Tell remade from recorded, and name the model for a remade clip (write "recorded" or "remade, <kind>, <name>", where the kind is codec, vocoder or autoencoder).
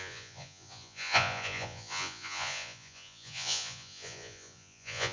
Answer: remade, vocoder, Vocos